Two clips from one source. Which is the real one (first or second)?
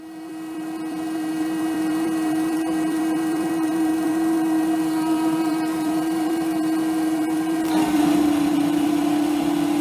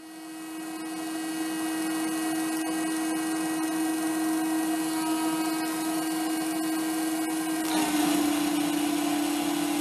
second